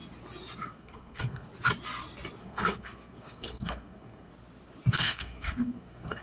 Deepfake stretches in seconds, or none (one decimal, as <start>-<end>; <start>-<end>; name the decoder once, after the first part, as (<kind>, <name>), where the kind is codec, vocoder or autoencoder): 0.6-1.5 (codec, SNAC); 2.4-4.3; 4.9-6.2